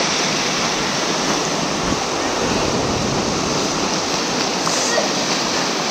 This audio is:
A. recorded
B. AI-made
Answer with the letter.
A